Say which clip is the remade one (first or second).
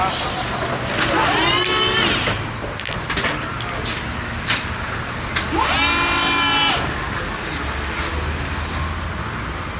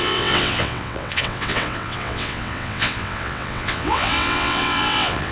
second